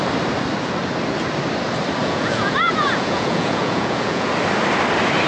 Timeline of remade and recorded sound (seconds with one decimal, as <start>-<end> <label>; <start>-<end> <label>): 0.0-2.0 recorded; 2.0-4.3 remade; 4.3-5.3 recorded